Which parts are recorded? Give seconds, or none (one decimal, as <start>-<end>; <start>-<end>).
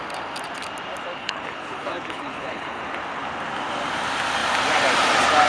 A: 0.0-1.2; 2.8-5.5